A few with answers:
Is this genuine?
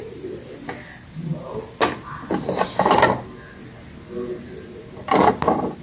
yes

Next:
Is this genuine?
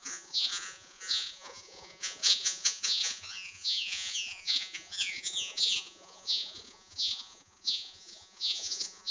no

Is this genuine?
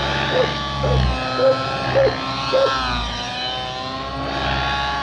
yes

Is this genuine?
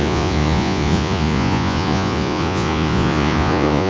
no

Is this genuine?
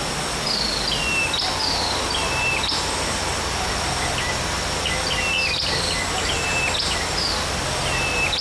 yes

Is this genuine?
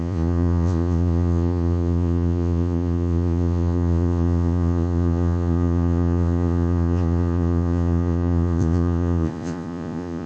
no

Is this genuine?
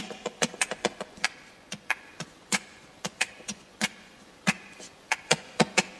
no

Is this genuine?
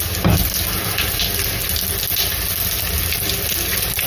yes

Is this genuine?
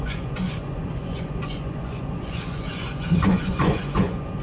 no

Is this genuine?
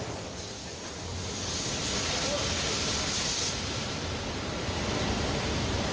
yes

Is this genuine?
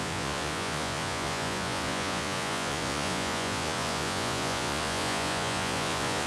no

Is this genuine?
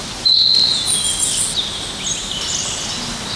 yes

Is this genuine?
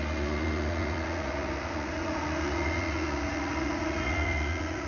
no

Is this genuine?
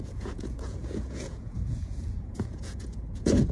no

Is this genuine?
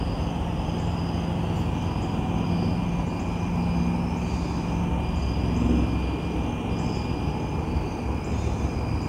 yes